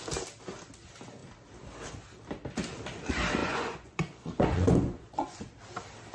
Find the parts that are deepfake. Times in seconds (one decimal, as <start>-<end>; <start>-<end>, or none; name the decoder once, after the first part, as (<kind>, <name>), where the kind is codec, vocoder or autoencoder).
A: 3.4-5.4 (vocoder, Vocos)